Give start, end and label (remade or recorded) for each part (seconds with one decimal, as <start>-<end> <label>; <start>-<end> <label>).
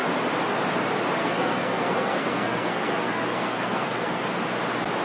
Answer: 0.0-1.2 recorded; 1.2-4.2 remade; 4.2-5.0 recorded